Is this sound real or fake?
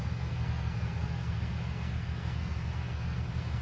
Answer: fake